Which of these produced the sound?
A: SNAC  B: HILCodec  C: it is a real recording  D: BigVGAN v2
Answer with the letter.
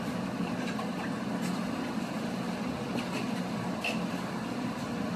C